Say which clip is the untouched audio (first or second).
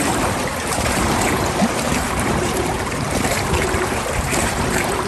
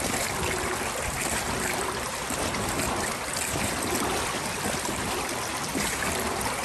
second